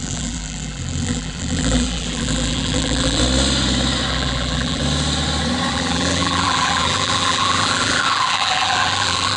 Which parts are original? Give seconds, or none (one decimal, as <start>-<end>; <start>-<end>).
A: 3.2-4.1; 4.8-5.7

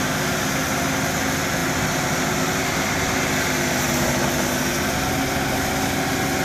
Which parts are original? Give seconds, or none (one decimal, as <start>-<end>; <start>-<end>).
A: 0.0-6.4